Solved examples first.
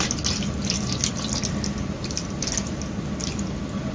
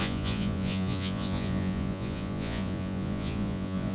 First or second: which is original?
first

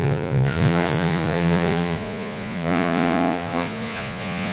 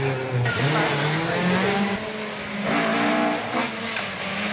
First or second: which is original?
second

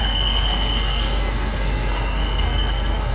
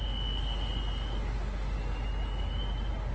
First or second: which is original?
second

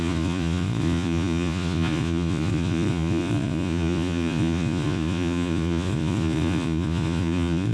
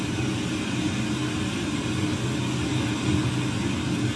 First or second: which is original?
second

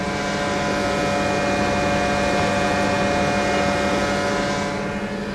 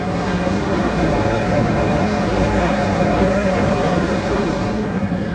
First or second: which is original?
first